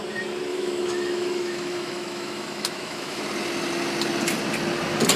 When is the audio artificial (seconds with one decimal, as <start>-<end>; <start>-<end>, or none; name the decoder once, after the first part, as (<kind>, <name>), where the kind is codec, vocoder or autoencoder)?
0.5-3.2 (autoencoder, DAC-VAE)